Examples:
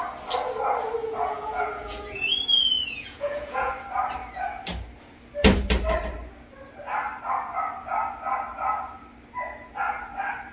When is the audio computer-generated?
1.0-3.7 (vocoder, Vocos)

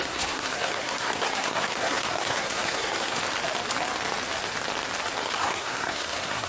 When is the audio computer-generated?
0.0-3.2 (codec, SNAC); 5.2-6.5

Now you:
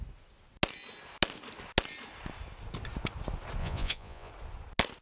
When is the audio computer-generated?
3.6-4.3 (vocoder, Vocos)

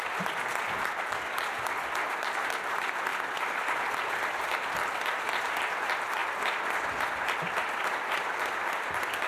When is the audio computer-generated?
none